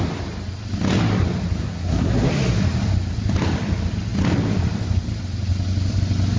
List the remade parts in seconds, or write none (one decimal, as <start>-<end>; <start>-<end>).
1.6-2.3

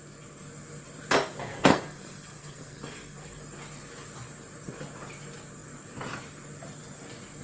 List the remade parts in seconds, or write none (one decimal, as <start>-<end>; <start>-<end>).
1.4-3.4